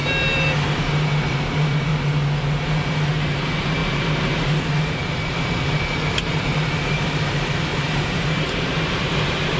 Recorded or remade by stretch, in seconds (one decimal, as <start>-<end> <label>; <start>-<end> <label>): 0.0-0.9 recorded; 0.9-1.9 remade; 1.9-2.6 recorded; 2.6-9.6 remade